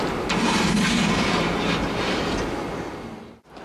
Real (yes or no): yes